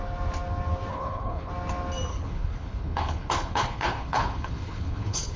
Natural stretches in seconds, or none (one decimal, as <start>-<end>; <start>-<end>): 0.0-0.9; 1.5-2.1